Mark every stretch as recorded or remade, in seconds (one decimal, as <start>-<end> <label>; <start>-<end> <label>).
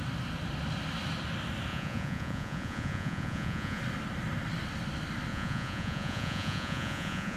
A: 0.0-1.7 recorded; 1.7-3.8 remade; 3.8-5.3 recorded; 5.3-7.4 remade